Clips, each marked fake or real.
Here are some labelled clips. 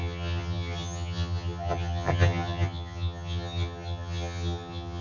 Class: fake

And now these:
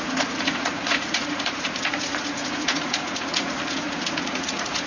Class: fake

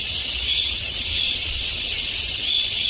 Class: fake